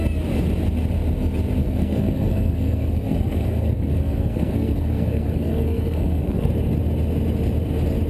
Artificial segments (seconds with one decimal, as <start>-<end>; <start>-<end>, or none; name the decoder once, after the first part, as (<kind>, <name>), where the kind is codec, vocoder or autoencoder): 1.6-6.5 (codec, SNAC)